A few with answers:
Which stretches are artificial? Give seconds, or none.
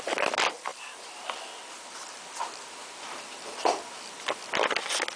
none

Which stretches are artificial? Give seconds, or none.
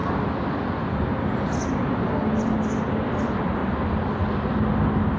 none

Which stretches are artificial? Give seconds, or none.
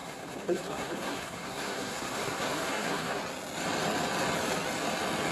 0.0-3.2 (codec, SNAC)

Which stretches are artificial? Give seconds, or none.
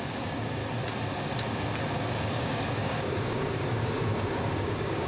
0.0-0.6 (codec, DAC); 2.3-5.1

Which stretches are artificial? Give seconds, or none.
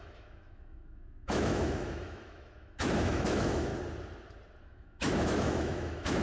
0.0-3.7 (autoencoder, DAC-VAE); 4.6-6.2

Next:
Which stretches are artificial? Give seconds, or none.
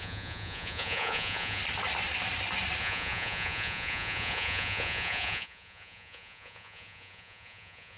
0.0-1.6 (vocoder, Vocos); 2.8-8.0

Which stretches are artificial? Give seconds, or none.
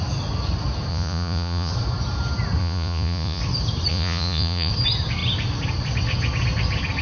0.9-1.7 (vocoder, Vocos); 2.6-3.4; 3.9-4.7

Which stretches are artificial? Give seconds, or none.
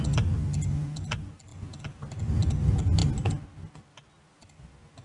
none